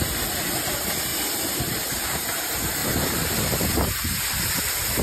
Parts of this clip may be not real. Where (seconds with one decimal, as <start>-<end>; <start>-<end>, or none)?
0.0-5.0